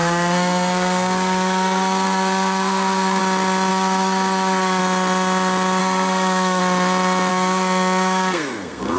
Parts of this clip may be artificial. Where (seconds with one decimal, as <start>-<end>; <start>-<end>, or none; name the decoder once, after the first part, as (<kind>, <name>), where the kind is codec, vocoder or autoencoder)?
0.0-3.2 (codec, SNAC); 3.7-4.8; 5.8-6.6; 7.3-9.0

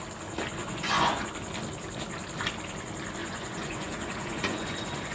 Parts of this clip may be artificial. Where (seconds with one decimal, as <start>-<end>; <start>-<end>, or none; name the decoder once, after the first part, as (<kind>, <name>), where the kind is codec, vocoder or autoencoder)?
0.6-1.3 (vocoder, Vocos); 3.2-5.1

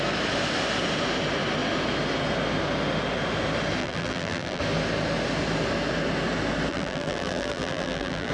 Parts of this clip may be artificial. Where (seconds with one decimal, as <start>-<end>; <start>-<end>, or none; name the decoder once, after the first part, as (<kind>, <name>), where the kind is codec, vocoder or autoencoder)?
3.8-4.6 (vocoder, BigVGAN v2); 6.7-8.3

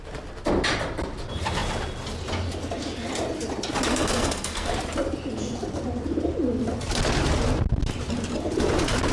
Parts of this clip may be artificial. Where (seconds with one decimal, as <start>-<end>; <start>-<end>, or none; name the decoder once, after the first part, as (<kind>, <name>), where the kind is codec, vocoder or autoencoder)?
3.9-4.7 (codec, SNAC)

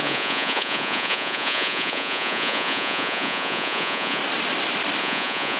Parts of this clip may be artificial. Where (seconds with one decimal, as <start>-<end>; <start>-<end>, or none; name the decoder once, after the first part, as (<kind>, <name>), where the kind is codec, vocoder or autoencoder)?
0.0-4.2 (vocoder, Vocos); 5.0-5.6

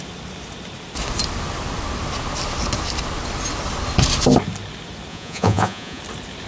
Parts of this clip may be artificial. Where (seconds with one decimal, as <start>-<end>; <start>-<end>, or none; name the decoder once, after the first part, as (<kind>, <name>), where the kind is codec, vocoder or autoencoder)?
5.1-6.0 (vocoder, Vocos)

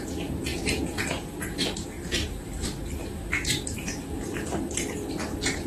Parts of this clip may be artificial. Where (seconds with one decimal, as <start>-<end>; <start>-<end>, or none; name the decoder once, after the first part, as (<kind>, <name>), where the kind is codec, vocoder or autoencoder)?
0.5-2.5 (vocoder, BigVGAN v2); 3.0-4.6